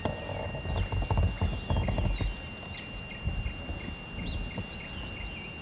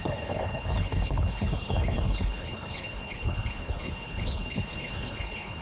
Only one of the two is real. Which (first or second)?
first